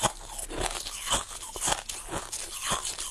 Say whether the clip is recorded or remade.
recorded